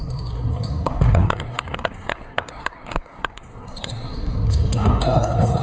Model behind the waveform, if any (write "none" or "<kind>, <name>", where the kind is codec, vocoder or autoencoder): codec, SNAC